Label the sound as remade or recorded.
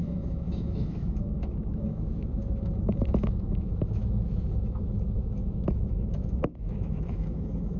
remade